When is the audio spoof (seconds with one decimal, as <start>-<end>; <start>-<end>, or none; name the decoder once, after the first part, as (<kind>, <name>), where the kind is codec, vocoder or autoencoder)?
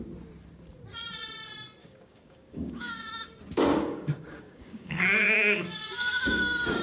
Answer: 1.8-3.1 (codec, DAC); 3.7-6.8